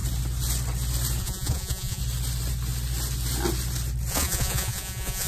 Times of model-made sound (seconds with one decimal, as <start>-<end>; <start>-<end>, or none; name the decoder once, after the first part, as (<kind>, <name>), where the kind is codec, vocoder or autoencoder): 1.2-2.0 (vocoder, Vocos); 4.1-5.3